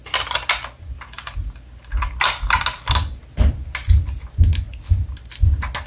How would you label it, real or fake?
real